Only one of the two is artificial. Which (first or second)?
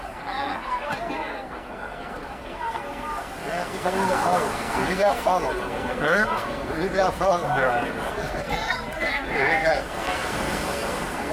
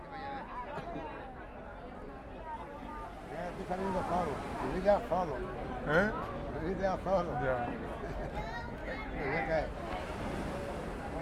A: first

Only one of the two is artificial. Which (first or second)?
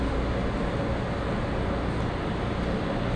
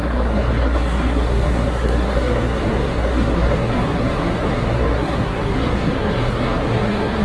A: second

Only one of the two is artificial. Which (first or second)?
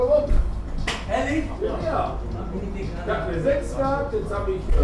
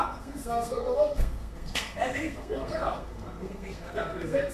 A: second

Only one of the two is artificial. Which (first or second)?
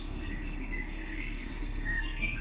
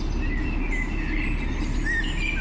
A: first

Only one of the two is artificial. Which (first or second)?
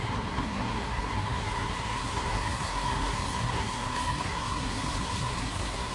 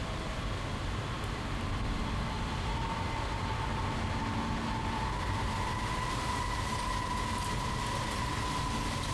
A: first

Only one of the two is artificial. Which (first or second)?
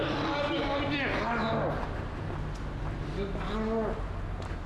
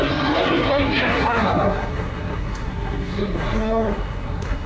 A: second